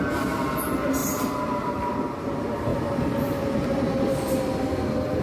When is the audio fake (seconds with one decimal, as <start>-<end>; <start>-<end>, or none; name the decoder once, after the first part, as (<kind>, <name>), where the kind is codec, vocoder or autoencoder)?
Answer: none